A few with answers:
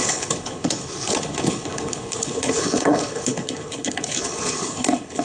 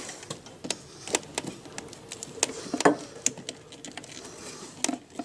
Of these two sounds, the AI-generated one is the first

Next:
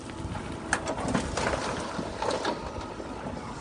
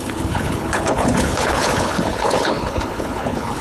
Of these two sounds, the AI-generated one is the second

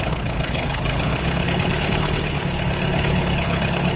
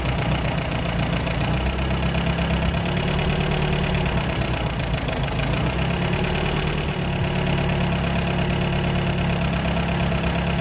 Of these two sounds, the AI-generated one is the first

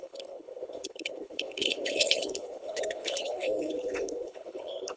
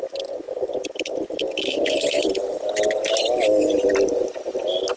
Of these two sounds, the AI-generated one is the first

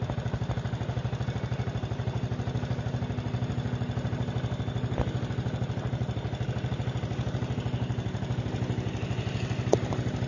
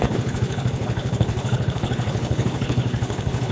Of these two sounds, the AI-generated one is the second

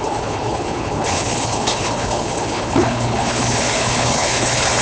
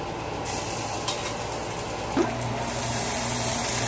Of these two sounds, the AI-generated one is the first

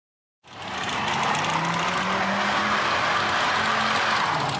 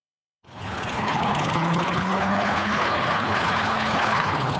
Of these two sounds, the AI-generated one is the second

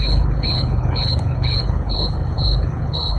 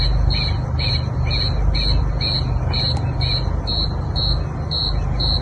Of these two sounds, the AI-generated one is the first